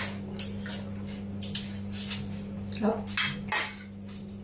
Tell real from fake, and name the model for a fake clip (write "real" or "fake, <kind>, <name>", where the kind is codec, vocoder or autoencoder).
real